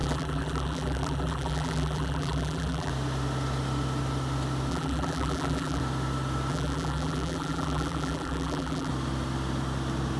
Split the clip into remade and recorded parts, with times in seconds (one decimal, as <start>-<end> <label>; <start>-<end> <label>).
0.0-2.9 remade; 2.9-4.7 recorded; 4.7-5.8 remade; 5.8-6.5 recorded; 6.5-8.9 remade; 8.9-10.2 recorded